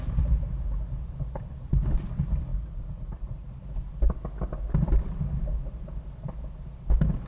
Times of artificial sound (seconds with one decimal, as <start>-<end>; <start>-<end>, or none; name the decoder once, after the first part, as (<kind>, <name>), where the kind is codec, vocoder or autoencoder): 2.5-3.5 (vocoder, Vocos)